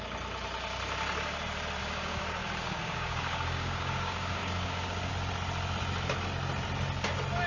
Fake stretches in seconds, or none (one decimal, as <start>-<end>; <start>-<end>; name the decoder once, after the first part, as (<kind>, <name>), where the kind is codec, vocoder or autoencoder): 1.8-5.1 (codec, DAC)